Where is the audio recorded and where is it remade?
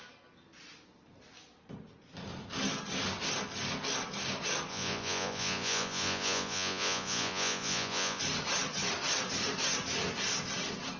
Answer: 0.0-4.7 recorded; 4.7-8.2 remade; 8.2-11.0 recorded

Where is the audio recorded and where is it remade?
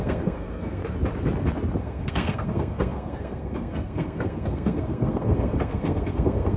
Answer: 0.0-0.8 remade; 0.8-1.8 recorded; 1.8-6.6 remade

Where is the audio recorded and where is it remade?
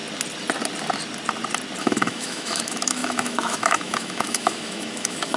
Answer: 0.0-1.8 recorded; 1.8-5.4 remade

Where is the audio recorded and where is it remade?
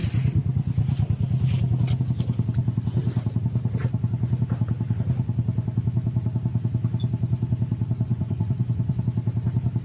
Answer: 0.0-8.1 recorded; 8.1-9.0 remade; 9.0-9.8 recorded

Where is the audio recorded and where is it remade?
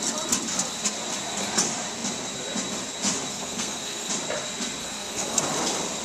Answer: 0.0-3.3 recorded; 3.3-4.1 remade; 4.1-4.8 recorded; 4.8-5.4 remade; 5.4-6.0 recorded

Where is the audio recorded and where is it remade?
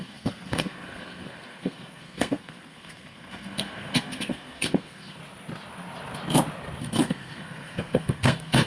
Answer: 0.0-5.2 remade; 5.2-6.8 recorded; 6.8-8.7 remade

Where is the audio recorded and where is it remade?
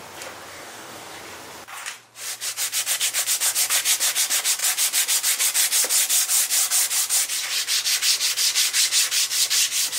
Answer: 0.0-0.5 recorded; 0.5-1.2 remade; 1.2-10.0 recorded